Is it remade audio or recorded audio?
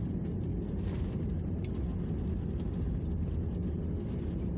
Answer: recorded